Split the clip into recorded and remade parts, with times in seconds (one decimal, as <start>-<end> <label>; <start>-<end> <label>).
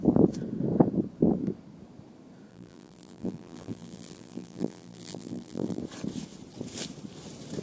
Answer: 0.0-2.5 recorded; 2.5-5.8 remade; 5.8-7.6 recorded